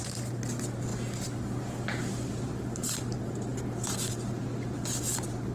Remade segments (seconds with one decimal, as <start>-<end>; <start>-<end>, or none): none